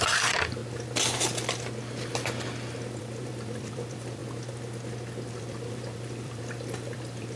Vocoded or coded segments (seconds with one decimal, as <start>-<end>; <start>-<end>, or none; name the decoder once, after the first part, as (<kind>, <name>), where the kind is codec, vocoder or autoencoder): 0.0-0.6 (vocoder, BigVGAN v2); 3.0-4.2; 5.3-7.4

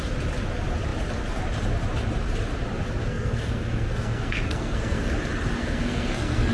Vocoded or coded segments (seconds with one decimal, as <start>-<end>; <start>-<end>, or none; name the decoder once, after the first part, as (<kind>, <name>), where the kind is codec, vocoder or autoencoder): 3.0-5.1 (codec, SNAC); 5.6-6.5

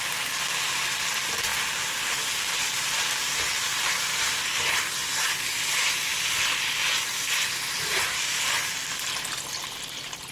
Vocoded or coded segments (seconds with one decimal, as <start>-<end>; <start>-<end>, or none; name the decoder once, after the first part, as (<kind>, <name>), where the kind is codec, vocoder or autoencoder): none

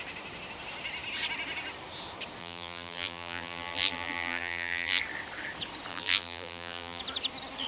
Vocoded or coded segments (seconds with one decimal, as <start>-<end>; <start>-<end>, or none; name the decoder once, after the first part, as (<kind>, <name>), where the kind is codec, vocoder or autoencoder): 2.4-5.0 (vocoder, BigVGAN v2); 5.9-7.0